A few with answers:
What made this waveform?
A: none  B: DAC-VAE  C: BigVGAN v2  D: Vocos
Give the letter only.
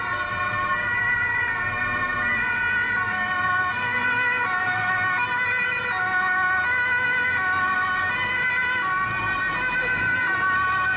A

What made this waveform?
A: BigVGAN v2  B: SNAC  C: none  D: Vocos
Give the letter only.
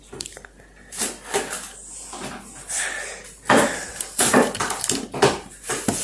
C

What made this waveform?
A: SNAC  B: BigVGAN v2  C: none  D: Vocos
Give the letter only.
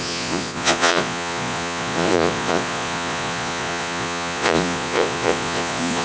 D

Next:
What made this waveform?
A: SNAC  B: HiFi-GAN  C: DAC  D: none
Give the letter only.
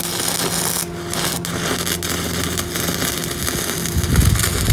D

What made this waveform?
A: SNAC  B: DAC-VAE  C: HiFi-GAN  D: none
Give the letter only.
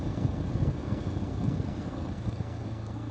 A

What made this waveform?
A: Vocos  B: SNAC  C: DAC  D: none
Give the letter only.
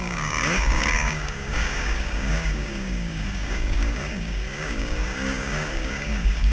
C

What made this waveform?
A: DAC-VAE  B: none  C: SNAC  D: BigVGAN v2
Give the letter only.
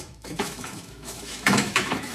A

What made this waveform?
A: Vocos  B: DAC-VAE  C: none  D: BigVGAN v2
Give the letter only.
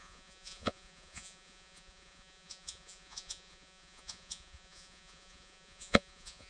A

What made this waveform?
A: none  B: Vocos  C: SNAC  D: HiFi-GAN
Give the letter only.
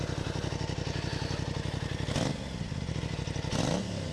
A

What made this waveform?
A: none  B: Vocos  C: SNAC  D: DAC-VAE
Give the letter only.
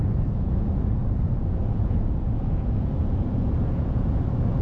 B